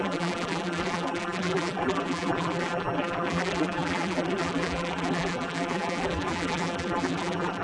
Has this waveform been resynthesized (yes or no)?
yes